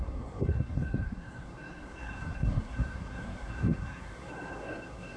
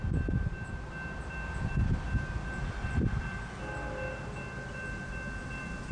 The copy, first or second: first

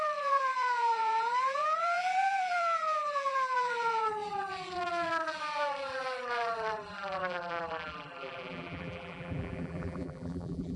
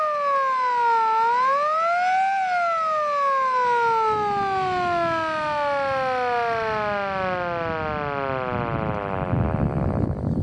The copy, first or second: first